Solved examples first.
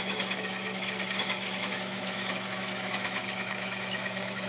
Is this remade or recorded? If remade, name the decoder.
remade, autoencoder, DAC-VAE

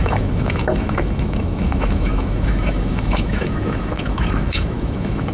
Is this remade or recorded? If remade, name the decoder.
remade, autoencoder, DAC-VAE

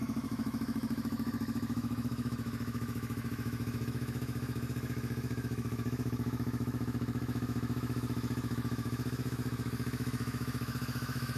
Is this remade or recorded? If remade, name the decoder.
remade, autoencoder, DAC-VAE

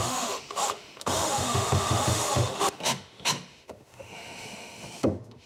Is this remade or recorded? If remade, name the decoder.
remade, autoencoder, DAC-VAE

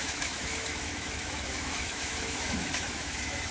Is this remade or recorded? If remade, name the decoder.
remade, autoencoder, DAC-VAE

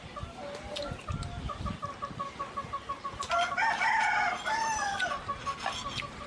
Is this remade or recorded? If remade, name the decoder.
recorded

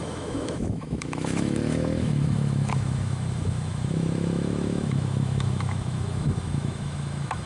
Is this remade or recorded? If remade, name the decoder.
remade, autoencoder, DAC-VAE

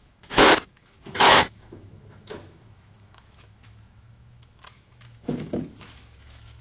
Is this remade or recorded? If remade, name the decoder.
remade, autoencoder, DAC-VAE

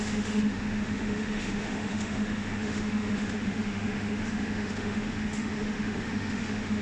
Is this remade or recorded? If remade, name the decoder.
remade, autoencoder, DAC-VAE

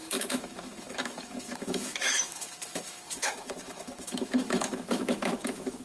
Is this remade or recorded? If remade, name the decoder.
remade, autoencoder, DAC-VAE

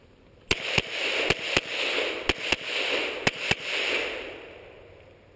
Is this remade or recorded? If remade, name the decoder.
recorded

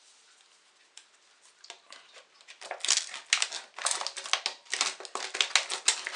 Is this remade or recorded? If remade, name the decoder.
recorded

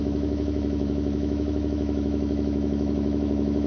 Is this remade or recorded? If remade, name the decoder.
remade, autoencoder, DAC-VAE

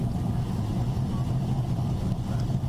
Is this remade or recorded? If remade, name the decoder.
recorded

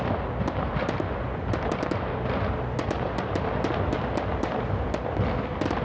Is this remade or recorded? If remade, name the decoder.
recorded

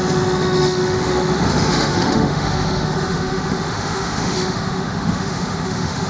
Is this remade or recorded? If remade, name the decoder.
remade, autoencoder, DAC-VAE